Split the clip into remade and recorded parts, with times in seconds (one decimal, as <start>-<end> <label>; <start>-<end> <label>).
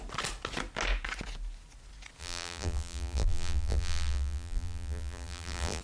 0.0-2.2 recorded; 2.2-5.8 remade